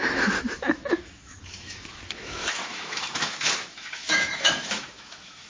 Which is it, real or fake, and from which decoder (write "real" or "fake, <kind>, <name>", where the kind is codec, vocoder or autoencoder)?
fake, autoencoder, DAC-VAE